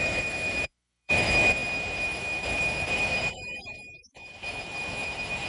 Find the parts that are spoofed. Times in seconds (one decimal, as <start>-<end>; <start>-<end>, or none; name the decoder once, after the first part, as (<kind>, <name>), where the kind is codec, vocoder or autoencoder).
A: 0.0-5.5 (autoencoder, DAC-VAE)